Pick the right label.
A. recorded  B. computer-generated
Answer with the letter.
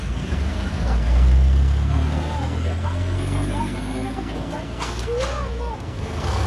B